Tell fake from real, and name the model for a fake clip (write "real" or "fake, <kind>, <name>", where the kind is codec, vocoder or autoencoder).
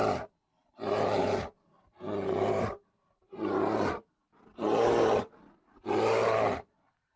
real